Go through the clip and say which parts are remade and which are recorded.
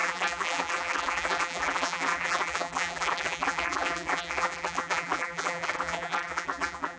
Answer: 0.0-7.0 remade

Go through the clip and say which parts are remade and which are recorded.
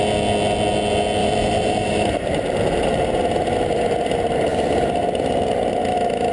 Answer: 0.0-1.2 recorded; 1.2-3.0 remade; 3.0-6.3 recorded